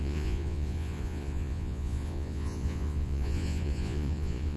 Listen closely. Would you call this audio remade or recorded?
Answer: remade